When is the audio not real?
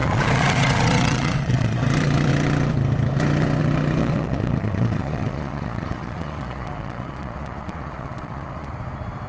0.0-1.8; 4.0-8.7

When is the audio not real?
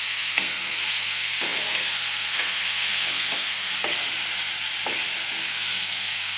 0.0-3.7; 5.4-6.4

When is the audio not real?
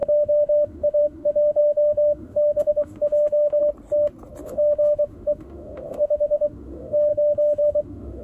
0.0-3.6; 4.4-8.2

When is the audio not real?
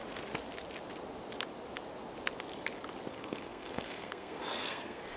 3.1-5.2